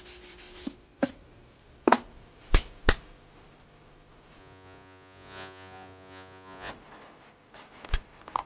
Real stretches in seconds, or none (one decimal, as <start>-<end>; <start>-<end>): 0.0-4.4; 6.7-8.5